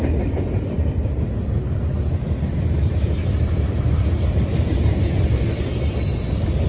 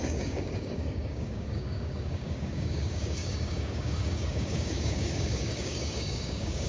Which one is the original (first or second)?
first